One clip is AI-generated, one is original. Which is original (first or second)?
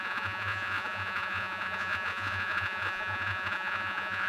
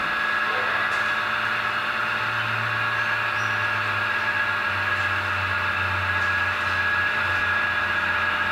second